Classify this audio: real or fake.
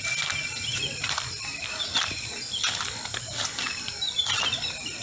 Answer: real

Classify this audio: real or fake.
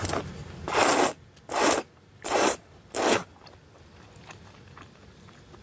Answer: real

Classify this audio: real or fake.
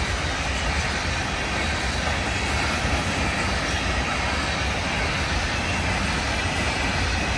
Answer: real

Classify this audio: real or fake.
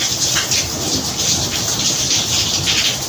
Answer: real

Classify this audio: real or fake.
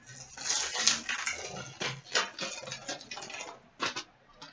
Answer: real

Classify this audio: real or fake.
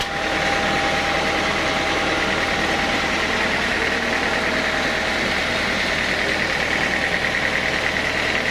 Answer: real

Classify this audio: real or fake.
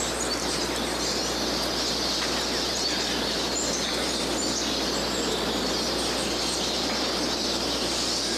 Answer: real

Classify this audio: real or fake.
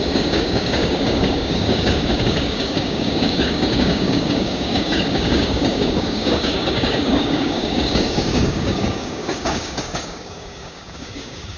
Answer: fake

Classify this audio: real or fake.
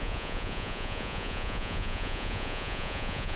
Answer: fake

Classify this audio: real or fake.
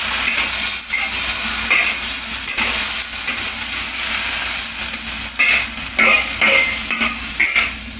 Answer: real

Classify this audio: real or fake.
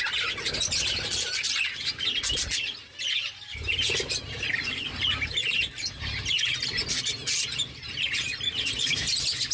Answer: real